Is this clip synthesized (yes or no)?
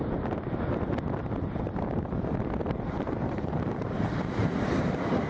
yes